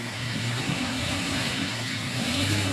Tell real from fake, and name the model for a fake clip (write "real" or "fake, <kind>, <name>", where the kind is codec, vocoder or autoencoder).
fake, codec, SNAC